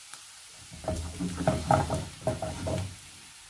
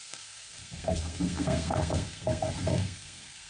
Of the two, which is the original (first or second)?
first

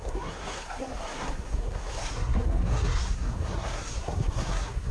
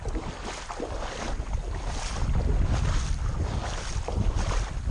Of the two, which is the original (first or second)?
second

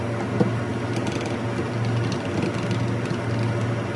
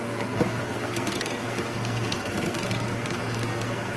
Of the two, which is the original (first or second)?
first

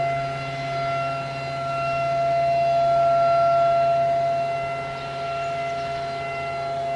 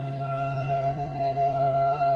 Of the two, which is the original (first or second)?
first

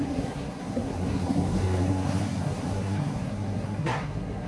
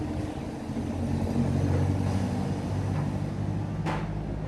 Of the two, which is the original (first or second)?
second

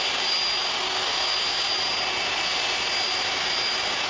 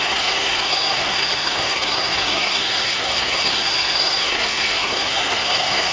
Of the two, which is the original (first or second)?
first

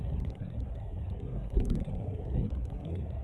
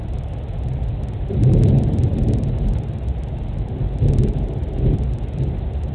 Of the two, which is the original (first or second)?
second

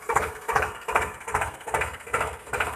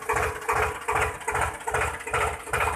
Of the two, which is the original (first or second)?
second